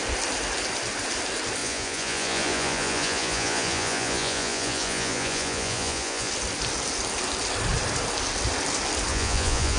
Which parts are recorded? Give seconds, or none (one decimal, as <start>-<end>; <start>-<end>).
0.0-1.6; 6.3-9.1